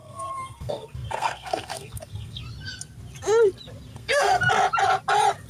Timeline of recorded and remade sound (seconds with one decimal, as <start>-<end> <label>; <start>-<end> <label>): 0.0-2.4 remade; 2.4-3.9 recorded; 3.9-4.5 remade; 4.5-5.5 recorded